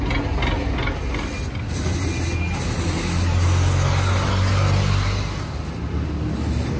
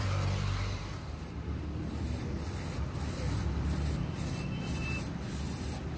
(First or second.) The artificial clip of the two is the second